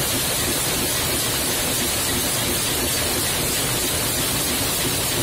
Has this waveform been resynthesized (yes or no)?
no